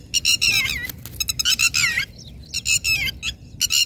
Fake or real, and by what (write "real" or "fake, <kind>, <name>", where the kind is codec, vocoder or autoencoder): real